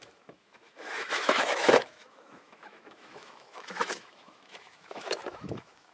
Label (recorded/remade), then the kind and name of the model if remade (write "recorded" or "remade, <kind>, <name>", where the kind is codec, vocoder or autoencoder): remade, autoencoder, DAC-VAE